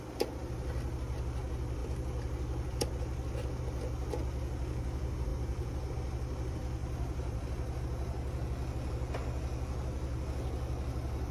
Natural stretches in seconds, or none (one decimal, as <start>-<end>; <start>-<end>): 0.0-6.8; 7.8-11.3